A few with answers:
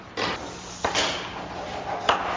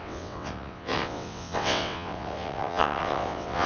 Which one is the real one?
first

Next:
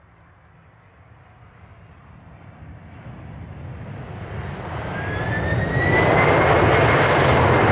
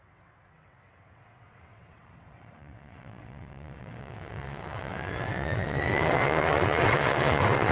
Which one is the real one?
first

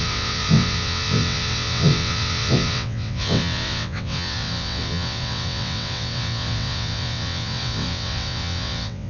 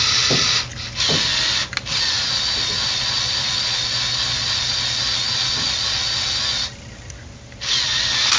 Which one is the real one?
second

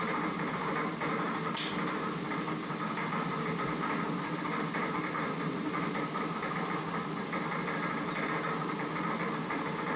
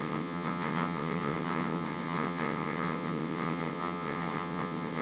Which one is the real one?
first